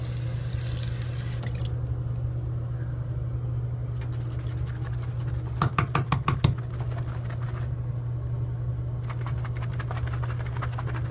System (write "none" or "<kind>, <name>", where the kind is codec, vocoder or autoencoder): none